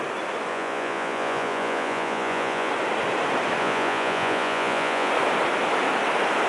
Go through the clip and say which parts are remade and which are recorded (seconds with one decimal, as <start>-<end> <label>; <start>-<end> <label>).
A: 0.0-0.5 recorded; 0.5-2.7 remade; 2.7-3.6 recorded; 3.6-5.1 remade; 5.1-6.5 recorded